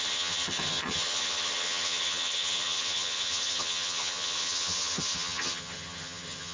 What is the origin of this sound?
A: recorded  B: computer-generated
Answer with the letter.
B